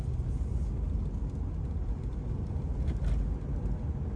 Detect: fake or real real